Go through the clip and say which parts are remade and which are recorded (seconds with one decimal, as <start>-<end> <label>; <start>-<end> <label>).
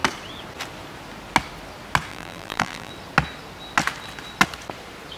0.0-2.1 recorded; 2.1-2.9 remade; 2.9-5.2 recorded